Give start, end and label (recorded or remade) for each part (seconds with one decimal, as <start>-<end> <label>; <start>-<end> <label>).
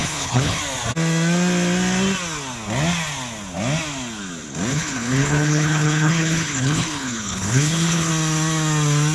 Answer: 0.0-0.6 remade; 0.6-4.7 recorded; 4.7-8.1 remade; 8.1-9.1 recorded